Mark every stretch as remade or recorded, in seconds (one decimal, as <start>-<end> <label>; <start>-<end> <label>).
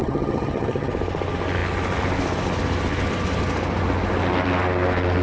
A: 0.0-0.9 remade; 0.9-5.2 recorded